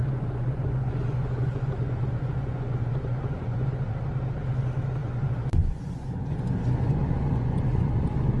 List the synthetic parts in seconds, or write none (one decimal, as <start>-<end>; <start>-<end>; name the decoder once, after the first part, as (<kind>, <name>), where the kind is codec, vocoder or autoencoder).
0.0-3.9 (vocoder, Vocos); 5.0-8.4